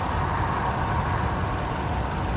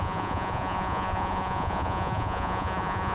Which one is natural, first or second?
first